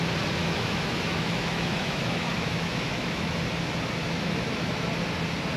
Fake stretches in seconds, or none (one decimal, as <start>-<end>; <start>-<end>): 0.4-3.4; 4.0-4.9